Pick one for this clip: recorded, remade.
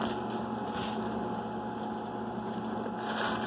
recorded